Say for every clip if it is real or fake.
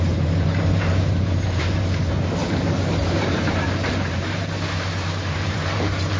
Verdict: fake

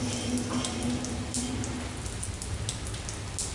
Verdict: real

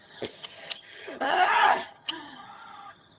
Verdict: fake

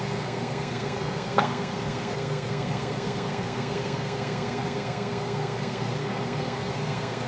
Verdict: fake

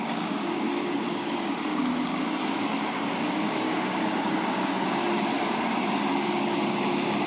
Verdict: fake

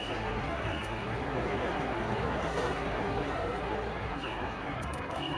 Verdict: fake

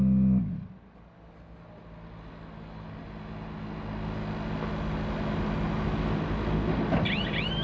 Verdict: real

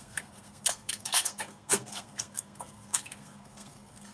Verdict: fake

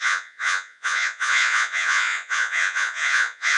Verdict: fake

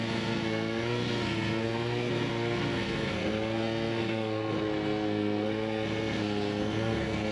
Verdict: fake